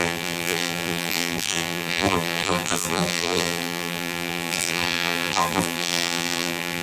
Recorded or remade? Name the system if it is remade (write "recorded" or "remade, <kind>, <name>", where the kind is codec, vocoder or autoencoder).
remade, vocoder, BigVGAN v2